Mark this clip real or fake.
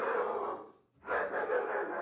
real